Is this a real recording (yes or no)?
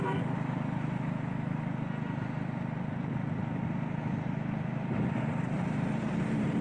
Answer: yes